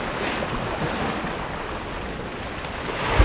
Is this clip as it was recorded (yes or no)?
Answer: yes